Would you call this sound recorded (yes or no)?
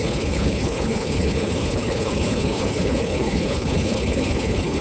no